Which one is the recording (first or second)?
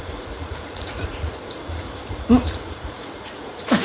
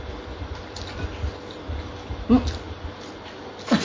second